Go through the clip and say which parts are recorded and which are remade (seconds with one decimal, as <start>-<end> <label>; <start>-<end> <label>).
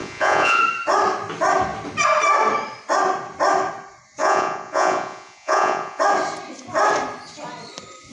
0.0-0.6 remade; 0.6-4.2 recorded; 4.2-6.0 remade; 6.0-8.1 recorded